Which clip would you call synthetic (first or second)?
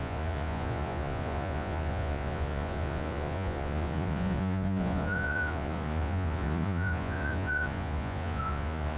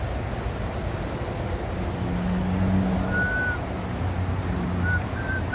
first